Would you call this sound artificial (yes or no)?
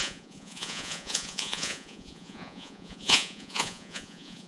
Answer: yes